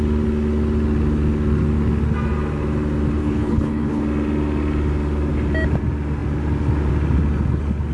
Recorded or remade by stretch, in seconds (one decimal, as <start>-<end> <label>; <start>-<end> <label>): 0.0-3.2 recorded; 3.2-4.0 remade; 4.0-7.9 recorded

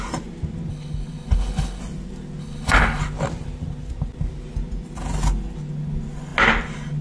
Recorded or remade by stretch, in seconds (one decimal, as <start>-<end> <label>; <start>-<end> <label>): 0.0-0.7 recorded; 0.7-1.8 remade; 1.8-2.4 recorded; 2.4-3.0 remade; 3.0-7.0 recorded

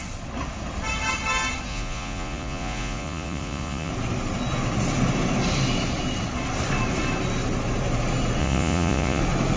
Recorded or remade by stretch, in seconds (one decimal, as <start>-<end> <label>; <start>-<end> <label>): 0.0-1.7 recorded; 1.7-3.9 remade; 3.9-8.4 recorded; 8.4-9.2 remade; 9.2-9.6 recorded

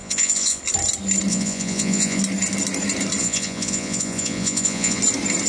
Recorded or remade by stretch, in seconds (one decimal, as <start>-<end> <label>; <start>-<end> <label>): 0.0-0.6 remade; 0.6-1.3 recorded; 1.3-2.2 remade; 2.2-3.2 recorded; 3.2-5.0 remade; 5.0-5.5 recorded

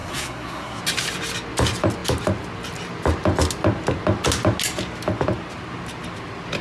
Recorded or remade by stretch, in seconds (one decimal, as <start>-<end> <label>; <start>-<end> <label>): 0.0-0.8 remade; 0.8-6.6 recorded

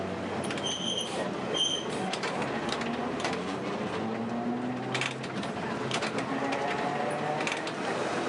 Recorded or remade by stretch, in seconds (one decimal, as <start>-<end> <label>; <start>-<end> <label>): 0.0-3.0 recorded; 3.0-3.7 remade; 3.7-8.3 recorded

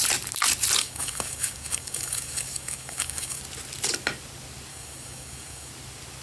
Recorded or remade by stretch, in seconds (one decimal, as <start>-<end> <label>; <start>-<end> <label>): 0.0-0.8 recorded; 0.8-3.4 remade; 3.4-4.7 recorded; 4.7-5.7 remade; 5.7-6.2 recorded